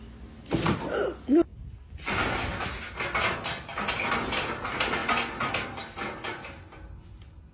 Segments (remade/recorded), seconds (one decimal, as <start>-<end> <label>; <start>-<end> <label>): 0.0-7.5 recorded